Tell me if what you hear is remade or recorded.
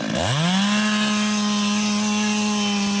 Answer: recorded